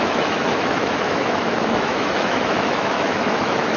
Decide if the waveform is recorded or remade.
remade